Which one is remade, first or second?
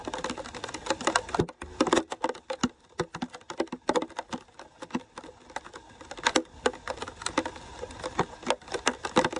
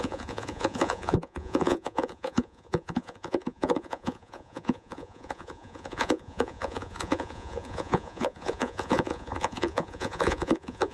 second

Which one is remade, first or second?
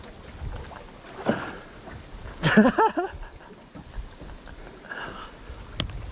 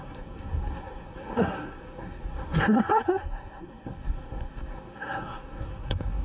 second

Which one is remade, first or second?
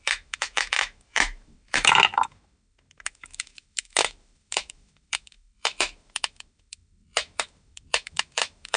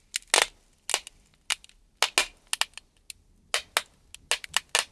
first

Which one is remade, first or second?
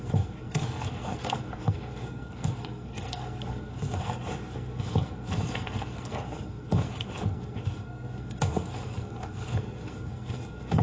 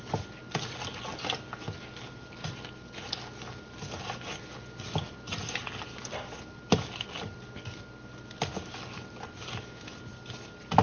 first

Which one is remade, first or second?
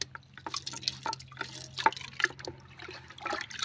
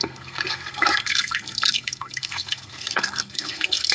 second